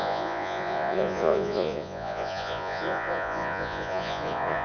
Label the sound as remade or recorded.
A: remade